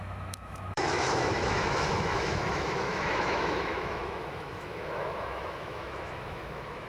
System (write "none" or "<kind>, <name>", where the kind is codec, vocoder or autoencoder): autoencoder, DAC-VAE